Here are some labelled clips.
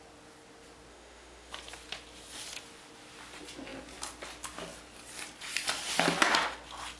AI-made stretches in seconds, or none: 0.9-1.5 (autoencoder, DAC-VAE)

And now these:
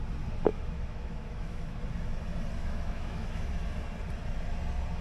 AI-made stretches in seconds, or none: 0.5-1.8 (autoencoder, DAC-VAE); 2.6-3.5

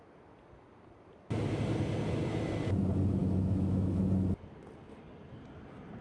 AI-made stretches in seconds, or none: 3.2-4.0 (autoencoder, DAC-VAE)

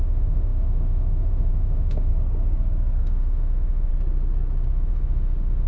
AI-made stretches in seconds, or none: 0.0-2.1 (autoencoder, DAC-VAE); 3.0-3.9; 4.7-5.7

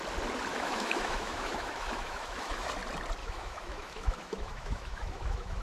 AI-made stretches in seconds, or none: 0.5-2.7 (autoencoder, DAC-VAE); 3.2-5.6

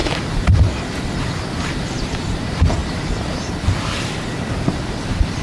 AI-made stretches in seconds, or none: none